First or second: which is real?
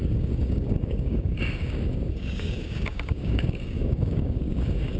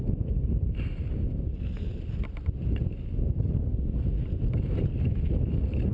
second